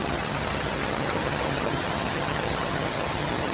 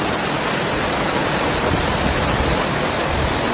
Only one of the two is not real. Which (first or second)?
first